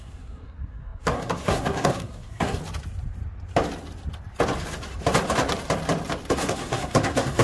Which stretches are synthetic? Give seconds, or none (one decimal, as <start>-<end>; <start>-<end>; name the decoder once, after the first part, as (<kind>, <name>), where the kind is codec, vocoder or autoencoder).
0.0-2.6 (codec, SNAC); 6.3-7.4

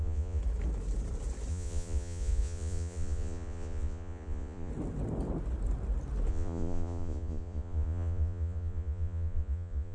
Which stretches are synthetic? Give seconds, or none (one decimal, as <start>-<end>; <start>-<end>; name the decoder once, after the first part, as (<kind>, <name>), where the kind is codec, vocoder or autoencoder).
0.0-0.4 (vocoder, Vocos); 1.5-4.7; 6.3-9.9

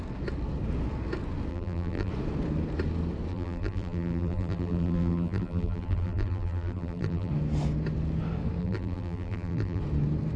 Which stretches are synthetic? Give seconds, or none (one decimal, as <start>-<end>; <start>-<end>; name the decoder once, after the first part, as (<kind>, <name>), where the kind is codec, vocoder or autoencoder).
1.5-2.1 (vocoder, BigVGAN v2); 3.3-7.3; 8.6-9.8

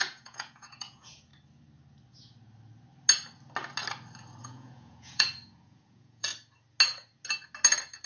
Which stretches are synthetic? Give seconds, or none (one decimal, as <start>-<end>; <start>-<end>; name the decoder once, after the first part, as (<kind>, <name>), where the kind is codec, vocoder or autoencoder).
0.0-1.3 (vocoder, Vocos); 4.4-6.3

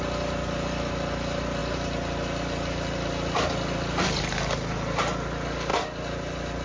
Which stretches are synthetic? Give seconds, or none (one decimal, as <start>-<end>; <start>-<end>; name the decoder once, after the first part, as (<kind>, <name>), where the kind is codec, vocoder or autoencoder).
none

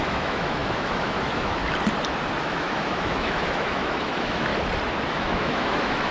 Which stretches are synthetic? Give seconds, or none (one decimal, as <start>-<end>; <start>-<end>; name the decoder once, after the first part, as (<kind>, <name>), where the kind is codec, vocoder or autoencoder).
0.0-1.6 (autoencoder, DAC-VAE); 2.4-4.5; 5.1-6.1

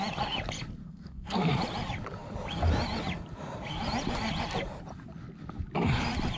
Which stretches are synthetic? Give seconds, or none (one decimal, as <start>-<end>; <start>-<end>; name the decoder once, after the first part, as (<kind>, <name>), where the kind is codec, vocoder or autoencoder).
0.8-1.5 (codec, SNAC)

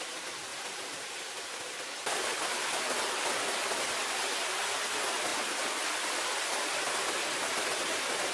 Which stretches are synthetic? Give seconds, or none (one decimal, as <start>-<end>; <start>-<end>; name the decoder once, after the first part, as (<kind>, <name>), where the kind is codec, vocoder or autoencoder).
none